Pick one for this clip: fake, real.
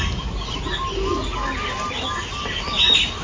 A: real